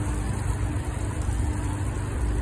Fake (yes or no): no